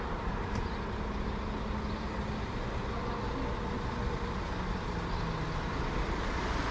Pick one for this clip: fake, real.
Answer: real